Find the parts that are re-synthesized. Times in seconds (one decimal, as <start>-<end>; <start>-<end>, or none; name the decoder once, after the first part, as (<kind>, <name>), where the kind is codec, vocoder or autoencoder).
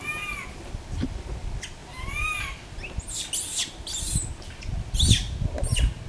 none